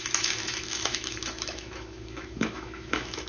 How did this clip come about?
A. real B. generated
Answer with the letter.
B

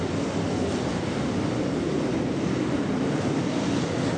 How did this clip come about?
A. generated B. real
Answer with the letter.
B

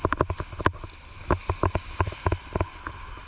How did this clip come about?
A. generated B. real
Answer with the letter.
B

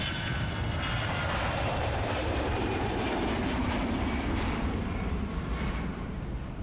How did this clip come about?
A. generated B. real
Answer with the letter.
A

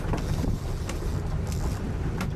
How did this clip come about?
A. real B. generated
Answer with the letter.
A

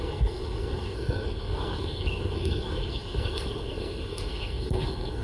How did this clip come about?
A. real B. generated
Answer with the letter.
B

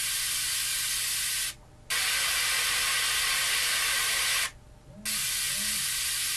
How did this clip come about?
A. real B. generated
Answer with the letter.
A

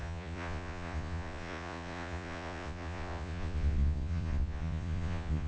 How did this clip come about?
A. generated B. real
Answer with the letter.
A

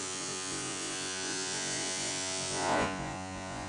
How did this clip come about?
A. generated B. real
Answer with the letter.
A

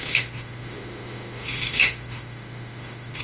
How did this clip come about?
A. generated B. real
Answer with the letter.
A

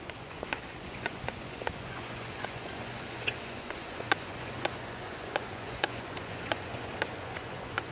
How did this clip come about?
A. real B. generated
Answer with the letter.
B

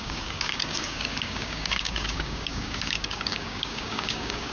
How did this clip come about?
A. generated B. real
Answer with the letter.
A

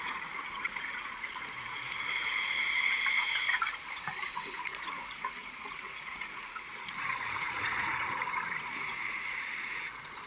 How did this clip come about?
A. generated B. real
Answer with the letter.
A